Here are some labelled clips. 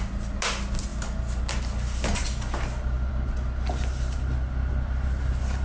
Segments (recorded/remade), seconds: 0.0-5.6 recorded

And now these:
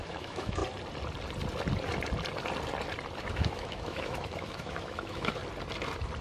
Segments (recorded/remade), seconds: 0.0-0.6 remade; 0.6-3.2 recorded; 3.2-5.4 remade; 5.4-6.2 recorded

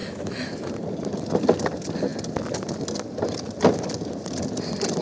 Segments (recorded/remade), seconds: 0.0-0.7 remade; 0.7-5.0 recorded

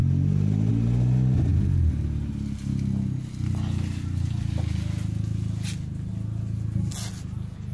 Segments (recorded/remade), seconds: 0.0-7.7 recorded